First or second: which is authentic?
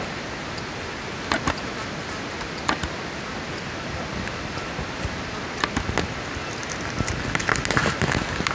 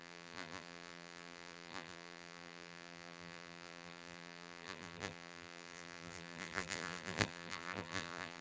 first